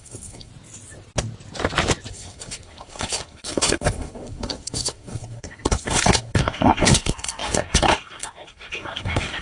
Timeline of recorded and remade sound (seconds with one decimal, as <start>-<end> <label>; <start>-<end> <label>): 0.0-0.5 remade; 0.5-2.1 recorded; 2.1-9.4 remade